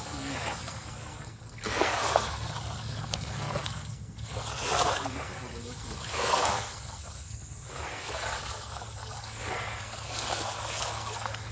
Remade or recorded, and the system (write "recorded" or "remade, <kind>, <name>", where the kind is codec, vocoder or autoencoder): remade, codec, SNAC